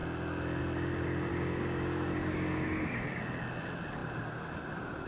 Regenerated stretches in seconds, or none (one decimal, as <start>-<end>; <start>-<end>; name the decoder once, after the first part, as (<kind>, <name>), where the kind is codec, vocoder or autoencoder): 1.3-3.0 (codec, DAC)